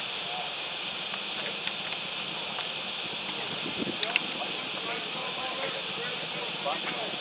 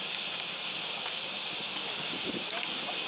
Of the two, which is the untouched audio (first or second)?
first